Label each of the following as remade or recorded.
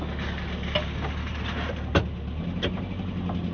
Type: recorded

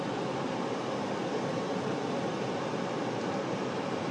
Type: recorded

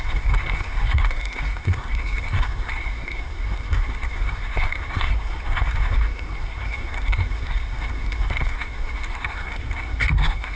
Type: remade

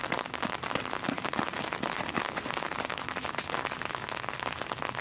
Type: recorded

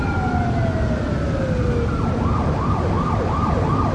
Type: recorded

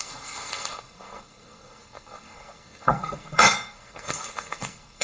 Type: remade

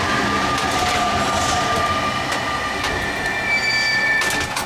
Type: recorded